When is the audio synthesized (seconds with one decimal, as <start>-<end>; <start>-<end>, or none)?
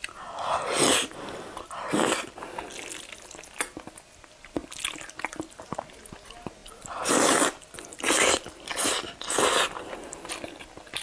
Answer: none